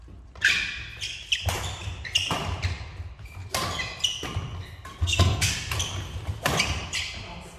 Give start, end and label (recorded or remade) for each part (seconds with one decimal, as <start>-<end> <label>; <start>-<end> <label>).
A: 0.0-5.0 recorded; 5.0-5.5 remade; 5.5-7.6 recorded